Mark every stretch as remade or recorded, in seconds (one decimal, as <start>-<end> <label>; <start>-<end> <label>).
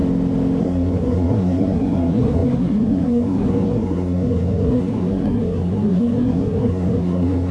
0.0-0.6 recorded; 0.6-7.5 remade